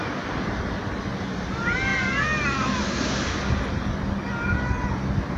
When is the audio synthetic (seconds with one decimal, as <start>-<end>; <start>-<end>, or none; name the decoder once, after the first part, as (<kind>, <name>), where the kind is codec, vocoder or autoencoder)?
none

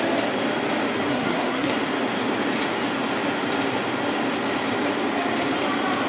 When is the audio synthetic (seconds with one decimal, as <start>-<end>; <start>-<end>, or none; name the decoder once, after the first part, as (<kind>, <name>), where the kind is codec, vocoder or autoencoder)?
1.1-1.7 (codec, SNAC)

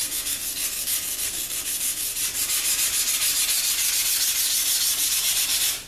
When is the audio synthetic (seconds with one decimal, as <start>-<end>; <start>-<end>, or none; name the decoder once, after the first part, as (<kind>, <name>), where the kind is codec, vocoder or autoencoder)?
0.0-2.1 (codec, SNAC)

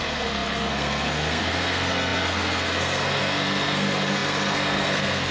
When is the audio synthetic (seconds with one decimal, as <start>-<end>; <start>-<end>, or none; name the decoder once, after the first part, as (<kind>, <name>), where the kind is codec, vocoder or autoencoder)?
0.0-5.3 (codec, SNAC)

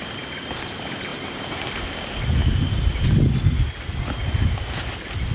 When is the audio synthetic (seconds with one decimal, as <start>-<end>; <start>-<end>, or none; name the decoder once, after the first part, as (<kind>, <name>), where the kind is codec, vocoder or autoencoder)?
none

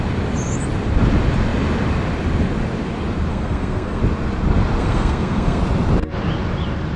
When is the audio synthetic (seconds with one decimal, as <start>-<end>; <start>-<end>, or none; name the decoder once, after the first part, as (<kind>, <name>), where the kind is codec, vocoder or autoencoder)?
3.3-4.0 (codec, SNAC); 4.8-5.6

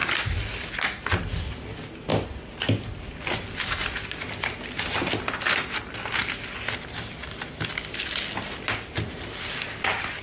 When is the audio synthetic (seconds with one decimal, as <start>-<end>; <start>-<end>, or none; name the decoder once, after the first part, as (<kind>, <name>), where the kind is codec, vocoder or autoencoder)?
none

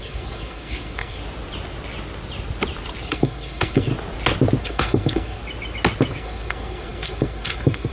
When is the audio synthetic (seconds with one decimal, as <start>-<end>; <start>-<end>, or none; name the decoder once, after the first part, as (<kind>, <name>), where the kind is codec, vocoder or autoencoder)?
0.0-1.2 (codec, SNAC); 3.0-3.9; 4.6-5.4; 6.1-7.9